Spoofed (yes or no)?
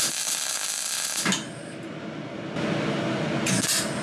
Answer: no